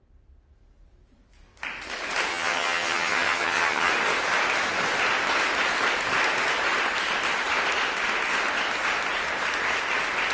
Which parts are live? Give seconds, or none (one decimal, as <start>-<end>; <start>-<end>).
0.0-2.3; 3.9-10.3